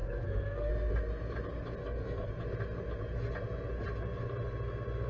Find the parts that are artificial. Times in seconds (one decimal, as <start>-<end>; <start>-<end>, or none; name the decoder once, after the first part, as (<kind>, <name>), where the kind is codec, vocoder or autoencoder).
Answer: 0.0-0.7 (codec, SNAC); 1.8-2.3